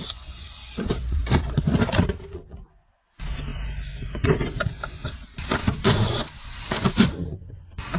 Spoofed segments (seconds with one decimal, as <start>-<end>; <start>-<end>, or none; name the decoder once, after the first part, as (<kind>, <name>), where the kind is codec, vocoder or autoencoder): 0.0-5.0 (vocoder, Vocos); 5.6-8.0